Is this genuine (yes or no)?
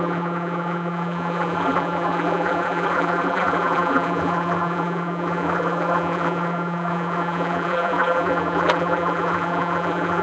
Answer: no